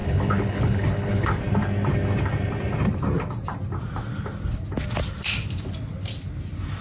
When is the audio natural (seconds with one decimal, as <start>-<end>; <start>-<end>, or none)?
1.4-6.8